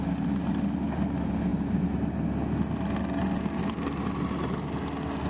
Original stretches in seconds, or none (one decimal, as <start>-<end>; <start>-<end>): 0.0-5.3